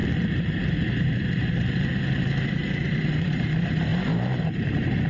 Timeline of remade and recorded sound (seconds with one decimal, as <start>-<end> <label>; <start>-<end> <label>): 0.0-5.1 remade